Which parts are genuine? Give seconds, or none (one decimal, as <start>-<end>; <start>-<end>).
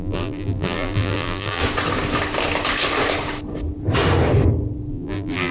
1.6-4.9